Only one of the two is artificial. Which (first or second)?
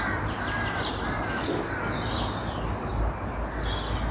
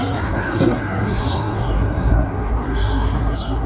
second